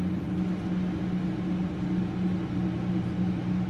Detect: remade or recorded recorded